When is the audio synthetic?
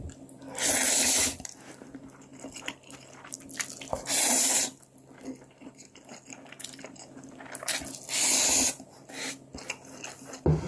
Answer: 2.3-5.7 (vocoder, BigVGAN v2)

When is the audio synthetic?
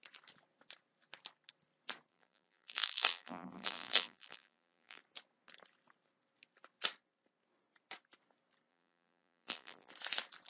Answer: 2.1-5.0 (vocoder, BigVGAN v2); 8.7-9.9